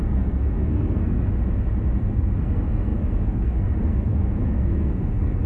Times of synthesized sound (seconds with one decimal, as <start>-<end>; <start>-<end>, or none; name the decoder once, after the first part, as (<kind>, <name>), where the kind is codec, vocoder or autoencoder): 0.0-1.3 (codec, SNAC); 2.0-5.5